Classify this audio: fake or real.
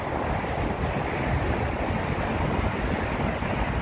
real